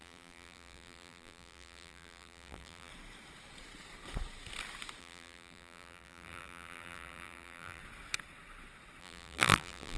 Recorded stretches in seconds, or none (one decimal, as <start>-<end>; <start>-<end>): 2.9-5.0; 7.8-9.0